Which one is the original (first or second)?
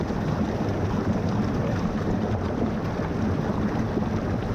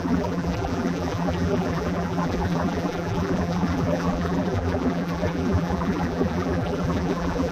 first